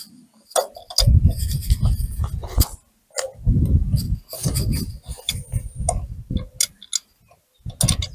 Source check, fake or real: real